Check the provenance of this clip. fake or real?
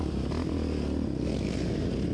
real